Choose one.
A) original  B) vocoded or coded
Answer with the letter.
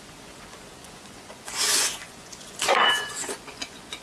B